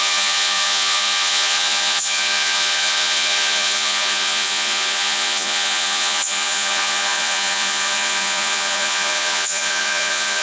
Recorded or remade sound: remade